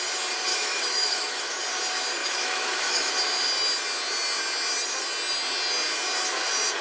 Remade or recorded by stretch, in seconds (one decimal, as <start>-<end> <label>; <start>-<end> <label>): 0.0-0.5 recorded; 0.5-1.6 remade; 1.6-2.2 recorded; 2.2-3.1 remade; 3.1-6.8 recorded